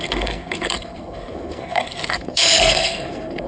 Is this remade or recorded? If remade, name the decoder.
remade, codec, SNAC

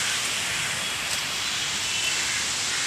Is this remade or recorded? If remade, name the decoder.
recorded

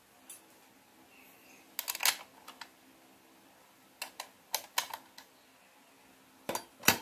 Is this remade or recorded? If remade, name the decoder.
recorded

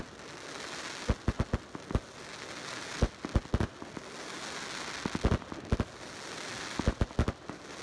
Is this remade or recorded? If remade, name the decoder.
recorded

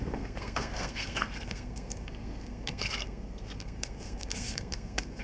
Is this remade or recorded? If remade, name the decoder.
remade, codec, SNAC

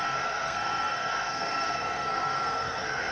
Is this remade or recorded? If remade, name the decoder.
remade, codec, SNAC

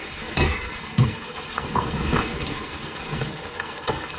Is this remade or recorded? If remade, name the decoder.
remade, codec, SNAC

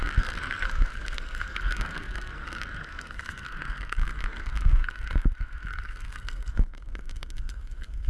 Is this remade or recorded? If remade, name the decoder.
remade, codec, SNAC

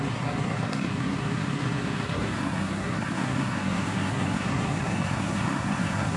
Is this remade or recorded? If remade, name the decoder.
remade, codec, SNAC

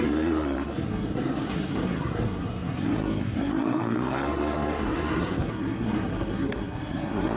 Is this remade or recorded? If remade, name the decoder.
remade, codec, SNAC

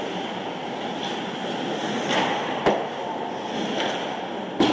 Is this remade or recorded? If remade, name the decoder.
recorded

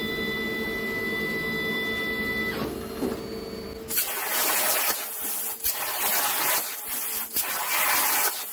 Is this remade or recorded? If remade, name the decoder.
recorded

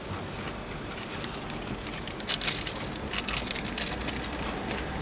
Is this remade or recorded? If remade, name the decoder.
recorded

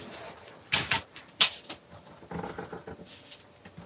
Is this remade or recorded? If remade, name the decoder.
recorded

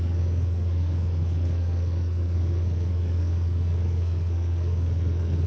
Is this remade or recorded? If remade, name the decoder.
remade, codec, SNAC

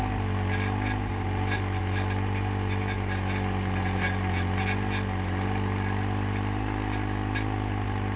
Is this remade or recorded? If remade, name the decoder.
recorded